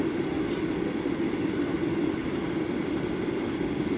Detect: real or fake real